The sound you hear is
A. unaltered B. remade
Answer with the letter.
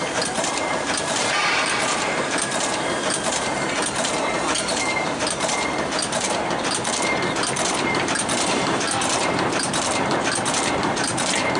B